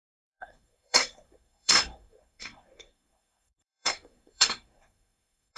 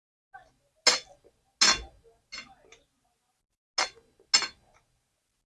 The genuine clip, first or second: second